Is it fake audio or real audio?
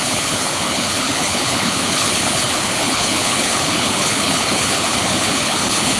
fake